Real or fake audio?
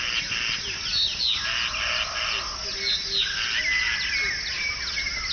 real